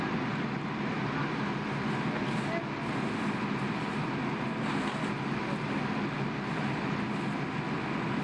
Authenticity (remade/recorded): recorded